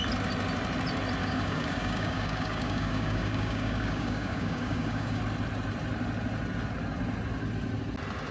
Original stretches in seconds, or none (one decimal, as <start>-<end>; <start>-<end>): 0.0-1.2; 5.2-8.3